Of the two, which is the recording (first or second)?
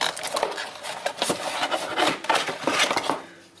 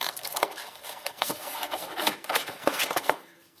first